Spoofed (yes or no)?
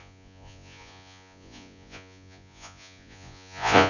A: yes